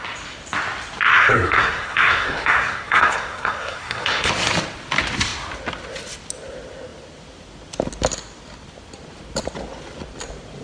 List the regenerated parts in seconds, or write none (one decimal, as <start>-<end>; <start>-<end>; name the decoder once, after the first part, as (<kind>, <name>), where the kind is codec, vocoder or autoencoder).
1.1-4.3 (codec, SNAC)